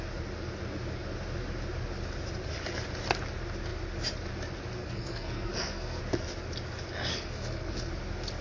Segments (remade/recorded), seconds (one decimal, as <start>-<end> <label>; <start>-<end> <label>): 0.0-4.8 recorded; 4.8-6.0 remade; 6.0-7.1 recorded; 7.1-7.9 remade; 7.9-8.4 recorded